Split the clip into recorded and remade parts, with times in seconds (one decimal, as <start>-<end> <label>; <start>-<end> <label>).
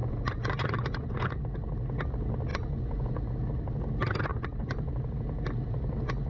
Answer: 0.0-1.3 remade; 1.3-2.5 recorded; 2.5-3.2 remade; 3.2-4.3 recorded; 4.3-4.9 remade; 4.9-6.3 recorded